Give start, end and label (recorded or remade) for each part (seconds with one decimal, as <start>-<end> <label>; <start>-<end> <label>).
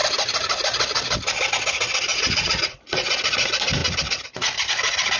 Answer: 0.0-2.1 recorded; 2.1-3.1 remade; 3.1-5.2 recorded